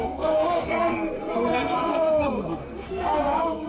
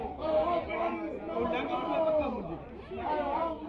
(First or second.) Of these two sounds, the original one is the second